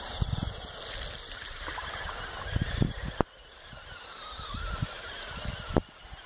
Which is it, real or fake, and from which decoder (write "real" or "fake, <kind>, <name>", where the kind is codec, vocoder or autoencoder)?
real